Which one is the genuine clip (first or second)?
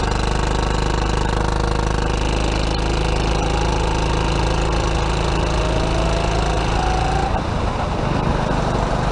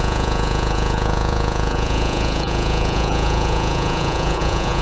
first